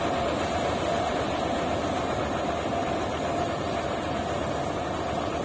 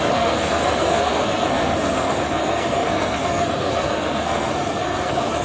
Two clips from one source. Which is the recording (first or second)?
first